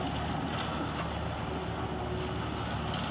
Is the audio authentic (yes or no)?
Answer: yes